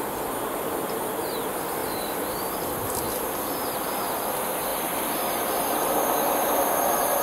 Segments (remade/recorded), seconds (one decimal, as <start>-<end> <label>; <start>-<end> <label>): 0.0-1.8 recorded; 1.8-2.4 remade; 2.4-4.7 recorded; 4.7-7.2 remade